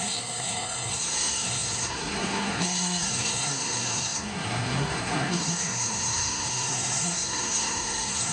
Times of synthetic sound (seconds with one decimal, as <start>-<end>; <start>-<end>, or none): 0.0-8.3